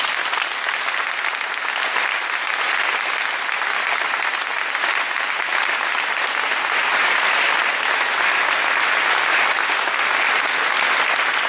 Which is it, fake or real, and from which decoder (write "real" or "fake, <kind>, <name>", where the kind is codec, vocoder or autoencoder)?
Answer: real